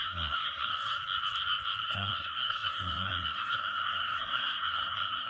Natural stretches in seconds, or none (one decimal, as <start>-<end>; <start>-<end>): 1.0-1.8